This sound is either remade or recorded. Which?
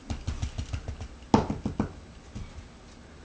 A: recorded